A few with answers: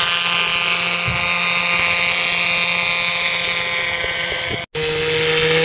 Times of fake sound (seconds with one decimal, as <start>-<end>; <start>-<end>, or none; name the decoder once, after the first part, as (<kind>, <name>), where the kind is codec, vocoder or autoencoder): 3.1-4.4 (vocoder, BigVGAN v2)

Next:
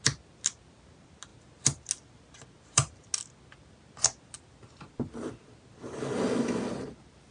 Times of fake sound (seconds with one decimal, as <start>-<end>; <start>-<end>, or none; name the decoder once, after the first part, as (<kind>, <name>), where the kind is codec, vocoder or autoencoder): none

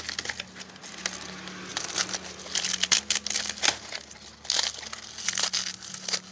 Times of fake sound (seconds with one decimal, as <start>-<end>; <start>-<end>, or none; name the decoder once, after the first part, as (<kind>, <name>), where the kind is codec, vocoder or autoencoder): none

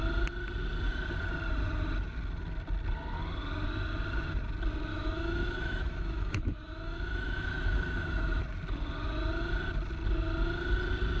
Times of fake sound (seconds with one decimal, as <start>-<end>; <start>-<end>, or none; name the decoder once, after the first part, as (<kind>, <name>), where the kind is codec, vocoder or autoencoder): 4.9-8.4 (autoencoder, DAC-VAE)